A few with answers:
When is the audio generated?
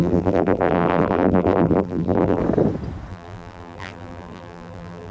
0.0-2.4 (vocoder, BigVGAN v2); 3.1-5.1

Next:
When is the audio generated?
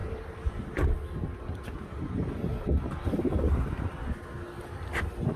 none